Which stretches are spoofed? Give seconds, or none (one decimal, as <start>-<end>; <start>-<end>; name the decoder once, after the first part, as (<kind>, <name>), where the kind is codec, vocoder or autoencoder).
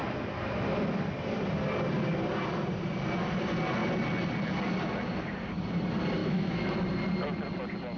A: 6.2-6.7 (autoencoder, DAC-VAE)